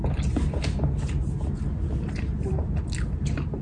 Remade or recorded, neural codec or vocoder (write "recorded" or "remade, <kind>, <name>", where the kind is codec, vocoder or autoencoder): recorded